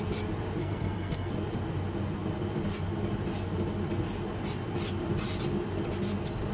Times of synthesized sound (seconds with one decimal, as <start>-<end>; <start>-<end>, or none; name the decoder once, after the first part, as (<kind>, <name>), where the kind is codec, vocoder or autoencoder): 0.6-1.3 (codec, SNAC)